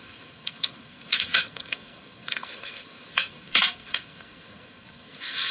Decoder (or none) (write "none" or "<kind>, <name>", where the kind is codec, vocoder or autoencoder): codec, SNAC